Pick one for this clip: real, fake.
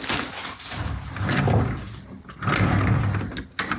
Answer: real